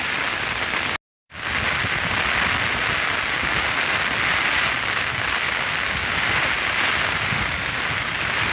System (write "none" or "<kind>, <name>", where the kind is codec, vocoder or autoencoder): none